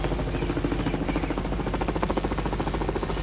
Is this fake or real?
real